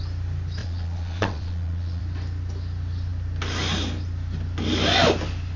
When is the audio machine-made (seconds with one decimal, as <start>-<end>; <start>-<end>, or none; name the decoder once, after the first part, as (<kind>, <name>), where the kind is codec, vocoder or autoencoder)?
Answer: 0.6-2.0 (vocoder, Vocos)